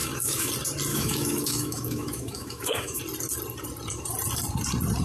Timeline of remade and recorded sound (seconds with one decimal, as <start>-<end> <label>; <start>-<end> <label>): 0.0-0.5 remade; 0.5-0.9 recorded; 0.9-3.0 remade; 3.0-5.0 recorded